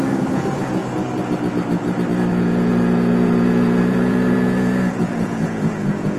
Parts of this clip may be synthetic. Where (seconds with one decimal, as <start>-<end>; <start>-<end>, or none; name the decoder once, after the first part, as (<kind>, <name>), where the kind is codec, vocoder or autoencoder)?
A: 0.0-0.8 (vocoder, Vocos); 2.3-6.2